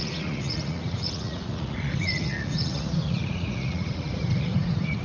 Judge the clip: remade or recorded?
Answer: remade